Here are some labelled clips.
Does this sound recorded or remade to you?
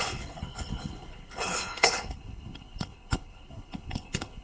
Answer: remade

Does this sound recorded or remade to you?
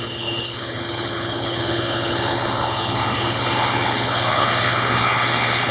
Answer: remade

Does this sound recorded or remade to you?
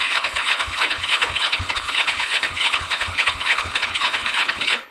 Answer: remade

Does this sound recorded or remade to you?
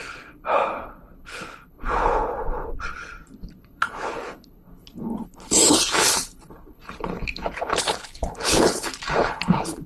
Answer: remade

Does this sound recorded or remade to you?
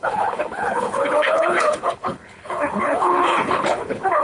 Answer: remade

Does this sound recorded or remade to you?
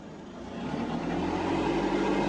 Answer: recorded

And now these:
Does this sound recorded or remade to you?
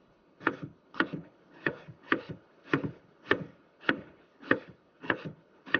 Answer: remade